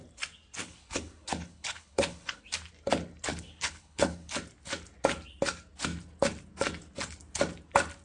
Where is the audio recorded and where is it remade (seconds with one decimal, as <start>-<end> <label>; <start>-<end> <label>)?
0.0-0.6 recorded; 0.6-2.4 remade; 2.4-3.3 recorded; 3.3-4.3 remade; 4.3-8.0 recorded